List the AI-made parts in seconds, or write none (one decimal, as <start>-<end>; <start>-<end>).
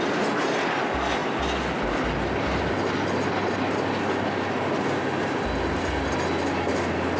none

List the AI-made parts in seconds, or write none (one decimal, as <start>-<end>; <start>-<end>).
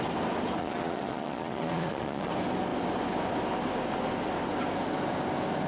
0.6-2.3